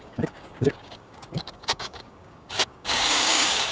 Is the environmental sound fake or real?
fake